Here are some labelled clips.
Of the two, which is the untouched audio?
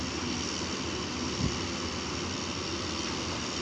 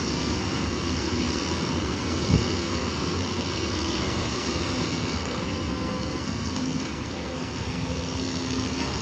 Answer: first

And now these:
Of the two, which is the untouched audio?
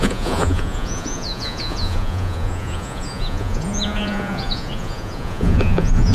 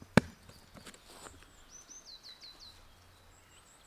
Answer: second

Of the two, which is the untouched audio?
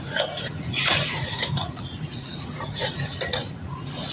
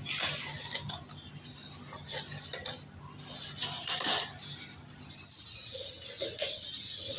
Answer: second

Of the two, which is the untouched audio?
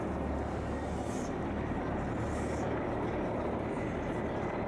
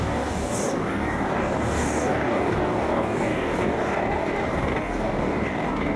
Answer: first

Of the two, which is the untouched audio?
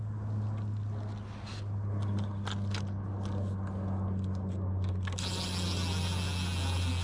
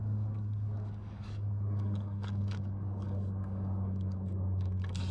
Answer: first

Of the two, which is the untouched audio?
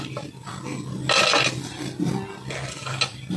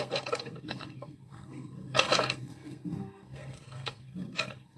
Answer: first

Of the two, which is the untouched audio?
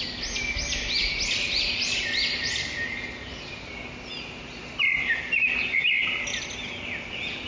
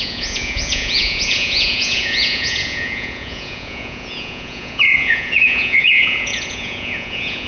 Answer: first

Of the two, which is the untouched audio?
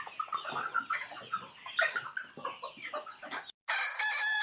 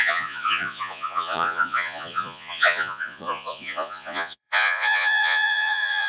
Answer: first